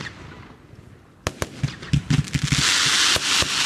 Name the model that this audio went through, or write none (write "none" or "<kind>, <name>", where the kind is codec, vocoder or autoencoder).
none